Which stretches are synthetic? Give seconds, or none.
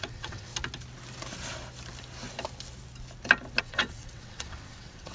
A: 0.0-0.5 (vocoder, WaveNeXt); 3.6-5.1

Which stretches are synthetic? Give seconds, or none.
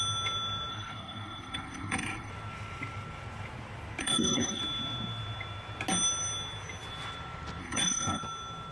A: 0.7-2.3 (codec, SNAC); 4.0-4.6; 7.6-8.2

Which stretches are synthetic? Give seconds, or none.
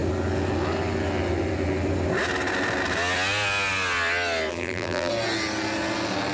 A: 4.5-5.1 (vocoder, BigVGAN v2)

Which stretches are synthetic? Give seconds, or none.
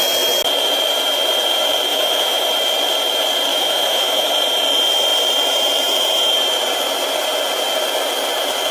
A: 1.9-2.4 (autoencoder, DAC-VAE); 3.5-4.3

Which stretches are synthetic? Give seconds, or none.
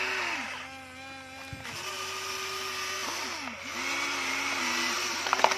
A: 0.0-3.0 (vocoder, BigVGAN v2); 4.6-5.6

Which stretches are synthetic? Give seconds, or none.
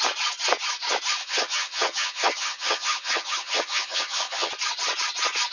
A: 1.2-4.5 (vocoder, HiFi-GAN)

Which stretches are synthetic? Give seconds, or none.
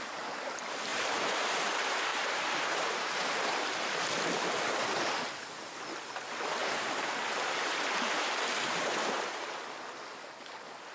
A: 0.9-1.5 (vocoder, BigVGAN v2); 2.1-4.1; 6.6-9.5